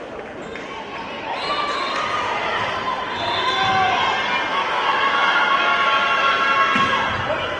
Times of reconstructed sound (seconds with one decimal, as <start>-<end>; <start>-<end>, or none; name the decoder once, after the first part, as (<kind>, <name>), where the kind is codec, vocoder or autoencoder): 4.5-5.6 (autoencoder, DAC-VAE)